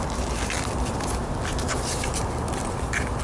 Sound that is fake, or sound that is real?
real